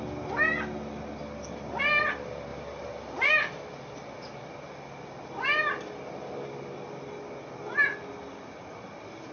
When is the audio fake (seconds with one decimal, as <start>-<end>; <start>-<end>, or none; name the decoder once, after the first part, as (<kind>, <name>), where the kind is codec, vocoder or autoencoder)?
none